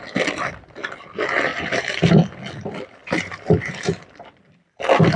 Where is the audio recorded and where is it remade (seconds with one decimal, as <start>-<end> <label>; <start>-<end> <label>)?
0.0-1.5 recorded; 1.5-2.1 remade; 2.1-3.0 recorded; 3.0-4.8 remade; 4.8-5.2 recorded